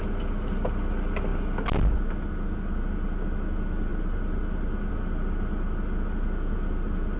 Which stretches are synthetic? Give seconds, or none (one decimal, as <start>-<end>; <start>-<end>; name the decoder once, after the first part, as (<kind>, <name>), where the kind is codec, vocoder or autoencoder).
none